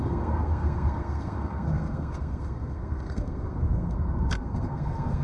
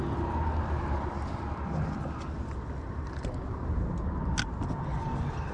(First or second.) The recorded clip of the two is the second